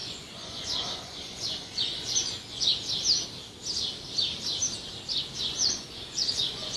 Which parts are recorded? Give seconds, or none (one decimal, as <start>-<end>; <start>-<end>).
2.7-5.4